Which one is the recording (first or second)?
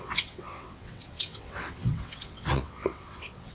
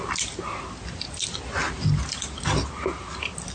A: second